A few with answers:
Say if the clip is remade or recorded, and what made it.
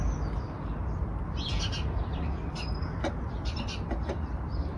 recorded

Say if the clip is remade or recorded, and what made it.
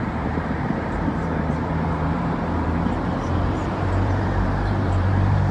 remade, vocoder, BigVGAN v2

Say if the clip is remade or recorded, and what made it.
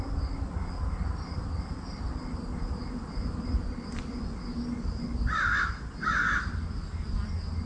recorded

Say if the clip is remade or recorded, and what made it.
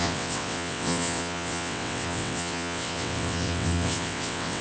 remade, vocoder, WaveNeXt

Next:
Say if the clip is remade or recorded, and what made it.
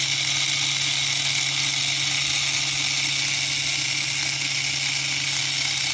recorded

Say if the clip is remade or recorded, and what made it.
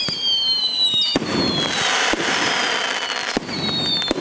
recorded